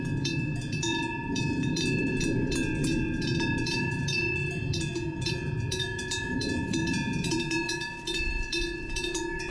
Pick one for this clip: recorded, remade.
remade